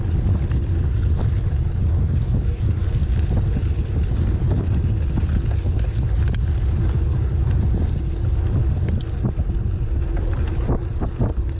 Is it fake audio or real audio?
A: real